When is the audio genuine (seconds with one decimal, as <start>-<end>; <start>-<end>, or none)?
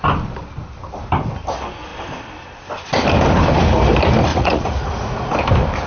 0.0-4.3; 5.4-5.9